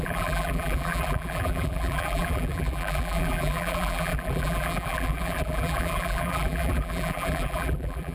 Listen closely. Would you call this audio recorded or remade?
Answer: remade